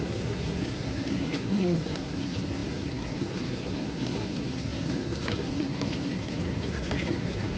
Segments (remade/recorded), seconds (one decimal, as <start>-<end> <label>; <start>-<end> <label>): 0.0-7.6 remade